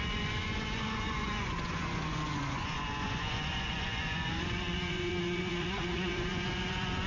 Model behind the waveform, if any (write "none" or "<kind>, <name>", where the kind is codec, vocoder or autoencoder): vocoder, Vocos